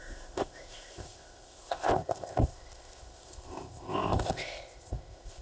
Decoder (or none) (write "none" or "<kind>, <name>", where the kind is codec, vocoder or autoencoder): codec, ZipCodec